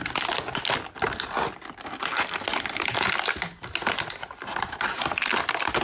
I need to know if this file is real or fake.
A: real